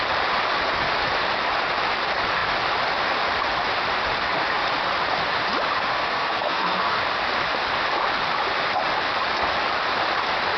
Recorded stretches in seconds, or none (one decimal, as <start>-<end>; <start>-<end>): 0.0-5.9; 7.0-10.6